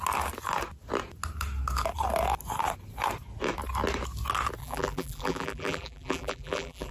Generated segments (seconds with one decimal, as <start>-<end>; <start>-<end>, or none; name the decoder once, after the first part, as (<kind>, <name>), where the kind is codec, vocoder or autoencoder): 4.6-6.9 (vocoder, BigVGAN v2)